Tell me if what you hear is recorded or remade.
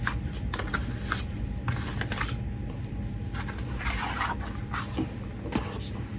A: recorded